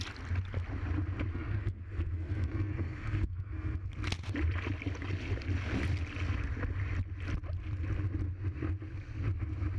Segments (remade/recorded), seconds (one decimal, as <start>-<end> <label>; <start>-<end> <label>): 0.0-1.3 recorded; 1.3-3.9 remade; 3.9-9.8 recorded